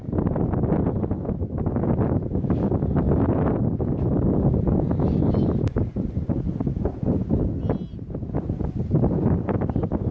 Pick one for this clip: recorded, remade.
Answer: recorded